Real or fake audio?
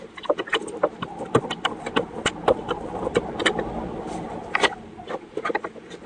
fake